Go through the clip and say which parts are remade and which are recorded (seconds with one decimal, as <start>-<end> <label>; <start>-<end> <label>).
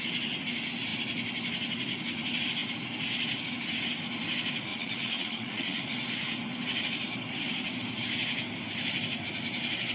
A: 0.0-4.7 recorded; 4.7-5.8 remade; 5.8-9.9 recorded